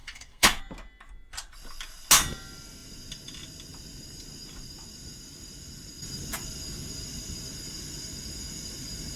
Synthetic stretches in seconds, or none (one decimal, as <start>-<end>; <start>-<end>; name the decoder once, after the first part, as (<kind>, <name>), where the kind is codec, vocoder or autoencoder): 0.0-0.6 (codec, SNAC)